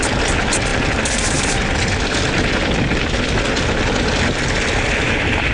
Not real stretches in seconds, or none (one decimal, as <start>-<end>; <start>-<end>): none